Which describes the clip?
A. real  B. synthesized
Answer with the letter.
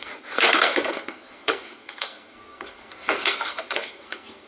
B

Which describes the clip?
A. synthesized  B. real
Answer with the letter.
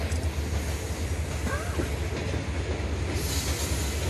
B